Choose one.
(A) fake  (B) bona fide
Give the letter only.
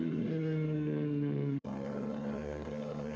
A